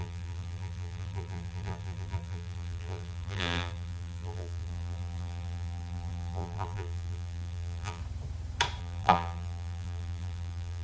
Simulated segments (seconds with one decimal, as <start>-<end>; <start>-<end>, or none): 0.0-8.0; 8.8-10.8